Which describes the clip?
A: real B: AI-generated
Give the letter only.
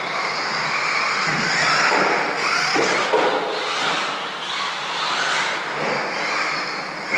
A